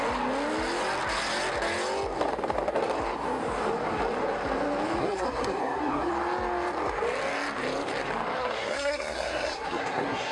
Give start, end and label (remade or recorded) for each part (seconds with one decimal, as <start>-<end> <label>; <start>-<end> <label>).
0.0-5.0 recorded; 5.0-6.1 remade; 6.1-8.4 recorded; 8.4-10.3 remade